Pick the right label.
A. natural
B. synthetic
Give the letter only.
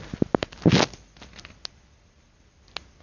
A